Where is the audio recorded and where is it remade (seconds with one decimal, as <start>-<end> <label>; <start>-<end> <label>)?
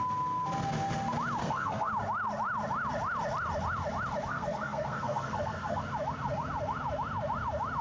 0.0-1.4 recorded; 1.4-1.9 remade; 1.9-4.3 recorded; 4.3-5.8 remade; 5.8-7.8 recorded